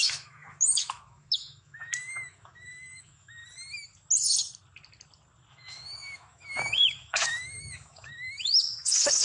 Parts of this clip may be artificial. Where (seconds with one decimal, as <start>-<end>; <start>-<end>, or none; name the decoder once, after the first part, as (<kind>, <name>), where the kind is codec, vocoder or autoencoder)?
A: 0.0-3.4 (autoencoder, DAC-VAE); 5.5-9.2